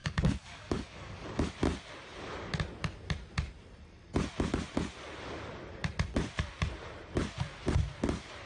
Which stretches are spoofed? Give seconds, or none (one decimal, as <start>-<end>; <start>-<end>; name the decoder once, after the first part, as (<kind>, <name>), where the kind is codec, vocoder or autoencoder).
0.0-1.5 (codec, DAC)